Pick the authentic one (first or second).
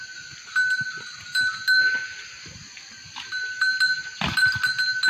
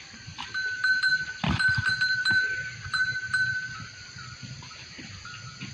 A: first